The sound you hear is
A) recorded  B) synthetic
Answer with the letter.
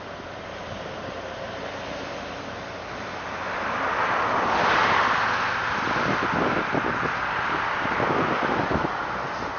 A